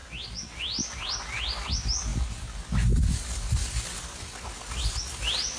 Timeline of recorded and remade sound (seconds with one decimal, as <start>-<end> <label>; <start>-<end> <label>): 0.0-5.6 recorded